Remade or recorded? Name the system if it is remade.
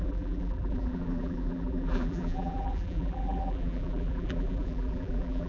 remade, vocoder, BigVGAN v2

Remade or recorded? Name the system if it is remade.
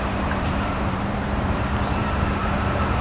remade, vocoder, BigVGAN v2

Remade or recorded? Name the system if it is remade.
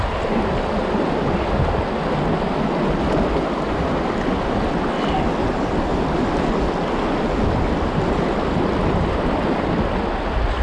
recorded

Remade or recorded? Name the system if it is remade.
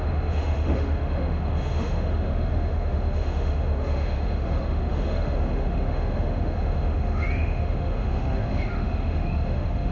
remade, autoencoder, DAC-VAE